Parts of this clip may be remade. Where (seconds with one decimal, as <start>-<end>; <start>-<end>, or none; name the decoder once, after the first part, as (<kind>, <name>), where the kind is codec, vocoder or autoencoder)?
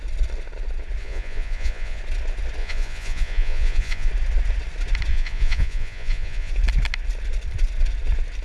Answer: 1.0-2.0 (vocoder, Vocos); 2.6-4.1; 5.1-6.5